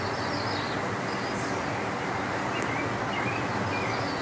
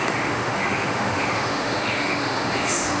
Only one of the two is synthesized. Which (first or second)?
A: second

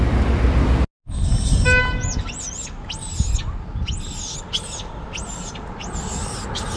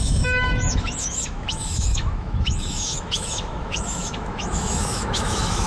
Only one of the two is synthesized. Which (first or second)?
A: second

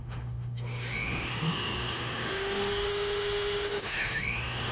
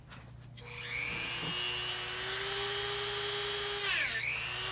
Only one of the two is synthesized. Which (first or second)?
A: first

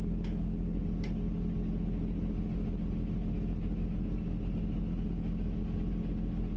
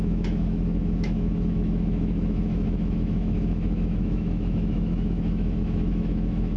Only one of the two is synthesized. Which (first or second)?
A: second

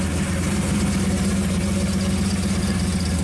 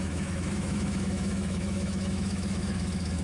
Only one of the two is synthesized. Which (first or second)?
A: second